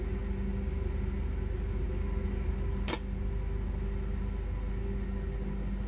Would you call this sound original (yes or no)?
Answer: yes